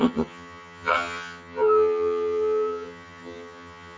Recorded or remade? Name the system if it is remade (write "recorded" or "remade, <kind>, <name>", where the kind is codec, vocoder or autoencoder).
remade, vocoder, HiFi-GAN